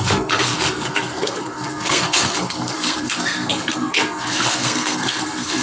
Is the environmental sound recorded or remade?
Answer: remade